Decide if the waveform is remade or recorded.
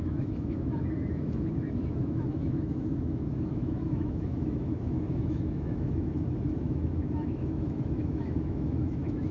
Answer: remade